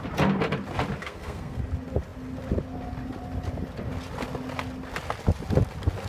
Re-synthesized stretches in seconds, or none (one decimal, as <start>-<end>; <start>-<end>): 1.0-1.6